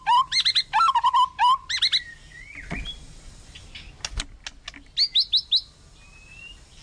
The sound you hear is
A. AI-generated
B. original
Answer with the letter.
B